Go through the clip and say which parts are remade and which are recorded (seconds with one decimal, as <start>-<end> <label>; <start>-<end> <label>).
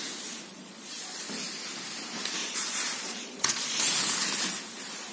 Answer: 0.0-0.5 recorded; 0.5-1.2 remade; 1.2-2.4 recorded; 2.4-3.8 remade; 3.8-5.1 recorded